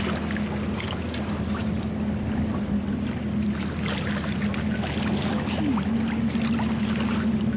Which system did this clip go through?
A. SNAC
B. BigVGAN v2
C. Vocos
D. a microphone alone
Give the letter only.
D